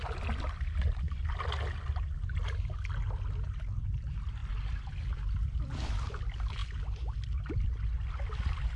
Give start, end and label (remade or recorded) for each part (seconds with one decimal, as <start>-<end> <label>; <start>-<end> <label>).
0.0-8.8 recorded